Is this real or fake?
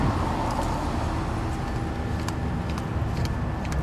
real